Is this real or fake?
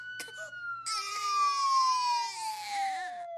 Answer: real